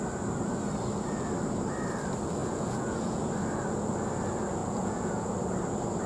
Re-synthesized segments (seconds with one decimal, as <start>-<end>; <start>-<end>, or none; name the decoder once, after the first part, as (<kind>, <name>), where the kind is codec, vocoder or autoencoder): 2.4-3.2 (vocoder, Vocos); 4.6-5.3